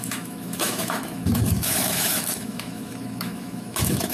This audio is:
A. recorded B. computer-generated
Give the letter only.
B